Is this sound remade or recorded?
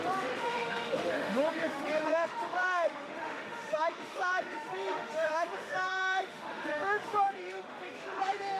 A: remade